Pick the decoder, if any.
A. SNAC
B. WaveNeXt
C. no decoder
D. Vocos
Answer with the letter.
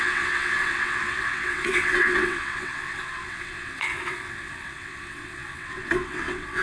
B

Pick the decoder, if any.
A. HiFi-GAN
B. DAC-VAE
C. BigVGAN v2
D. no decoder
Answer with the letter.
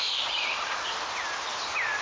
D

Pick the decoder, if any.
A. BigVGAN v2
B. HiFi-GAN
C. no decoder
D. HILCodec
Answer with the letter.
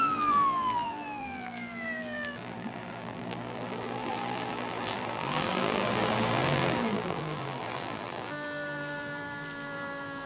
A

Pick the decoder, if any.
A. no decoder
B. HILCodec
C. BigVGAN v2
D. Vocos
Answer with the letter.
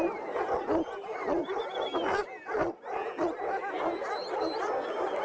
A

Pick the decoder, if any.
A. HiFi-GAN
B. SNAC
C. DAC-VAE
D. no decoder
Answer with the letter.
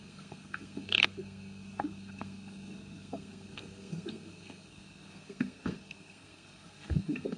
B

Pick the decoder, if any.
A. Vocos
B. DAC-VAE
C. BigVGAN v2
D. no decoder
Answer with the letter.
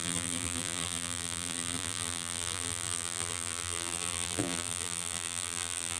C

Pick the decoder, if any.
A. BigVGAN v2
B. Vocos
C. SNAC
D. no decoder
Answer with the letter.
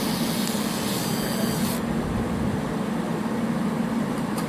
D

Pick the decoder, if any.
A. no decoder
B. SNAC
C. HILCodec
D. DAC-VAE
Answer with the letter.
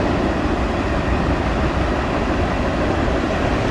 A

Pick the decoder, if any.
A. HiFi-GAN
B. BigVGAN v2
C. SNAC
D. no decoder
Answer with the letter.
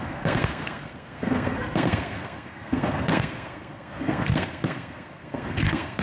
C